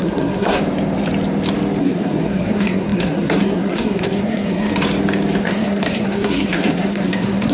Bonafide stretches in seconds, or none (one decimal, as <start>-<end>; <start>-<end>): 0.6-1.8; 4.7-5.4